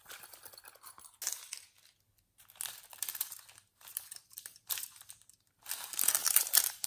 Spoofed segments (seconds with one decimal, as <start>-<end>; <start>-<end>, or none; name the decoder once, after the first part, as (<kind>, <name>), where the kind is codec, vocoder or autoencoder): 3.7-5.6 (vocoder, BigVGAN v2); 6.2-6.9